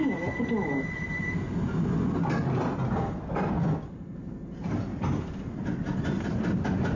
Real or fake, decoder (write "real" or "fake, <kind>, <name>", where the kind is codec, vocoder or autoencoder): real